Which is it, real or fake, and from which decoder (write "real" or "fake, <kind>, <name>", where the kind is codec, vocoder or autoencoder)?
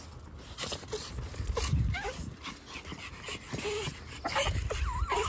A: real